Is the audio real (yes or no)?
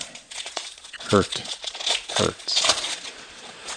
no